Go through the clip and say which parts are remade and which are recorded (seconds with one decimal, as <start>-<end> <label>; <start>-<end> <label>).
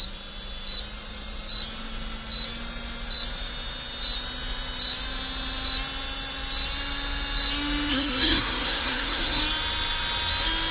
0.0-7.9 recorded; 7.9-9.4 remade; 9.4-10.7 recorded